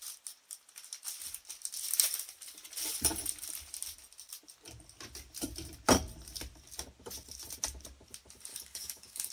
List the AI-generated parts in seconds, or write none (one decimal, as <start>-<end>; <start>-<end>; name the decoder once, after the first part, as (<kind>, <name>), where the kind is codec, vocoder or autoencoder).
8.5-9.3 (codec, DAC)